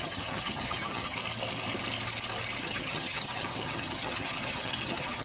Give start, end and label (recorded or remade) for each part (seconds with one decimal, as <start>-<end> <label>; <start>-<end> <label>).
0.0-1.2 remade; 1.2-2.6 recorded; 2.6-5.2 remade